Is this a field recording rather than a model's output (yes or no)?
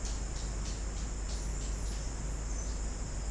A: yes